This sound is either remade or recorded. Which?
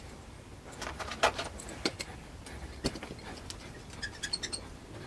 recorded